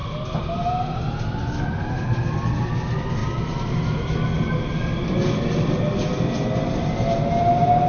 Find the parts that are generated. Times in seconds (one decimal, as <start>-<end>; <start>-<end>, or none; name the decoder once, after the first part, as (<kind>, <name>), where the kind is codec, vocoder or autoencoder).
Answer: none